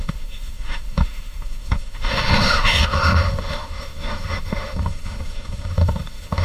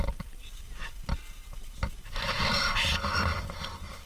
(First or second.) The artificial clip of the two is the first